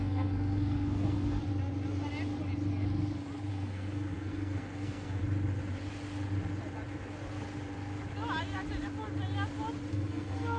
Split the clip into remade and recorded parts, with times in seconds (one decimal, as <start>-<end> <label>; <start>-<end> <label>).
0.0-1.4 remade; 1.4-3.5 recorded; 3.5-5.2 remade; 5.2-9.9 recorded; 9.9-10.6 remade